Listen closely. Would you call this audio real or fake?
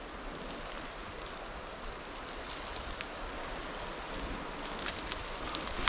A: real